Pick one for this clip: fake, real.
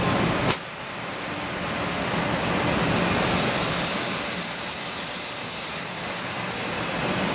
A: real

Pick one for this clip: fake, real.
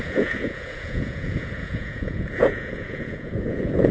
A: fake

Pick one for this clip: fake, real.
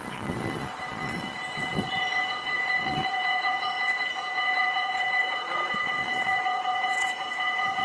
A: fake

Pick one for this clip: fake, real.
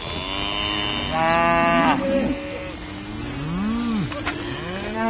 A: real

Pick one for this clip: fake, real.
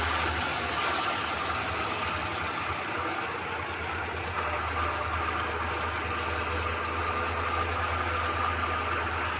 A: real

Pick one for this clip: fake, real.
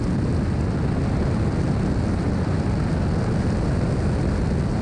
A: real